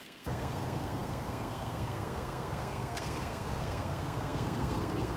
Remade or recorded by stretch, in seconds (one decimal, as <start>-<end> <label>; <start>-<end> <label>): 0.0-5.2 remade